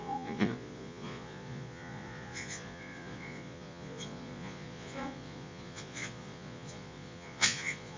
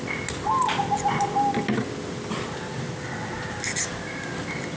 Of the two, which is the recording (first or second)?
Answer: second